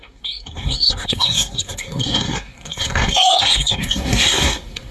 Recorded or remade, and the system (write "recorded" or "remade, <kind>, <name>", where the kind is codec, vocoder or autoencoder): remade, codec, SNAC